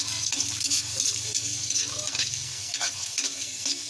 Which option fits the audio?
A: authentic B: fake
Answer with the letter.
B